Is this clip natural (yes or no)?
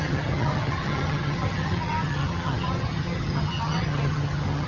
no